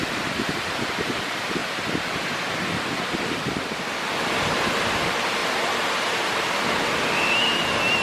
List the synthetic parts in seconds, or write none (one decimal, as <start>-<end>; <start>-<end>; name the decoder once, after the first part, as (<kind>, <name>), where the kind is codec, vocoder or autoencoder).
1.6-2.2 (vocoder, BigVGAN v2); 5.4-7.2